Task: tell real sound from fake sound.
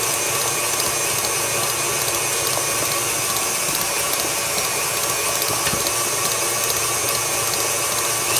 real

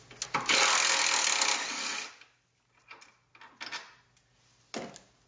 real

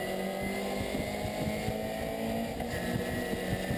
real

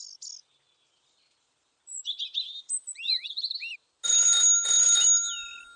real